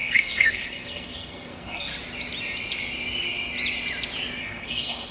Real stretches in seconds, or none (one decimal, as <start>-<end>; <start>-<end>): 1.9-4.4

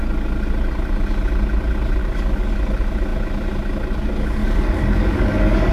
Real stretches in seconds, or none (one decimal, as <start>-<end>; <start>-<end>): 0.0-2.0; 2.5-4.4

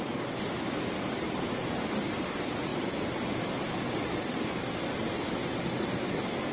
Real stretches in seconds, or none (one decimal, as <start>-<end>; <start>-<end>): 0.0-6.5

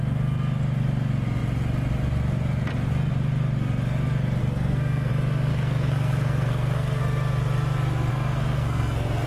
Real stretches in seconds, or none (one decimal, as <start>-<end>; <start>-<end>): 0.0-4.4; 5.1-5.5; 7.0-8.1

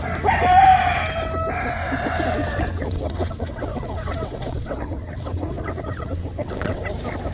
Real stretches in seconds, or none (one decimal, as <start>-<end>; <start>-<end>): 0.0-2.4; 6.8-7.3

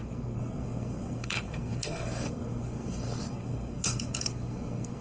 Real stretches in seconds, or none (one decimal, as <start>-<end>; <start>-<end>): none

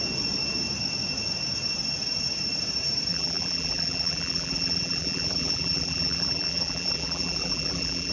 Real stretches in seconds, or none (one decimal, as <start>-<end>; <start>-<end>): 0.0-3.1